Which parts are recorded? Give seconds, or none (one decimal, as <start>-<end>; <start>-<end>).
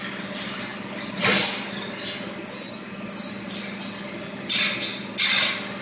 0.0-5.8